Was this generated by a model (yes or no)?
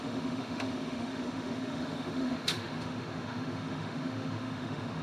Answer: yes